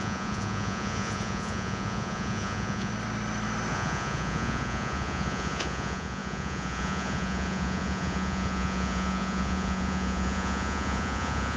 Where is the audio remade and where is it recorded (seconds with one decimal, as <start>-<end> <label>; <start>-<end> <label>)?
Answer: 0.0-2.9 remade; 2.9-3.7 recorded; 3.7-11.6 remade